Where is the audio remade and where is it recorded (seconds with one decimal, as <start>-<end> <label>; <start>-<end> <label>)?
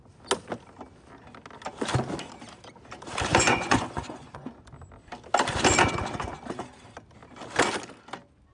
0.0-3.3 recorded; 3.3-4.5 remade; 4.5-8.5 recorded